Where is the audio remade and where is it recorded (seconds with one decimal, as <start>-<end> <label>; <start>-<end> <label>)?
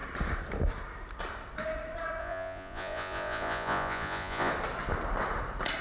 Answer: 0.0-2.2 recorded; 2.2-4.5 remade; 4.5-5.8 recorded